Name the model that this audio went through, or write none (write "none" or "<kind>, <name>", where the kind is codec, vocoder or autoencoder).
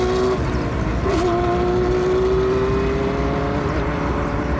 none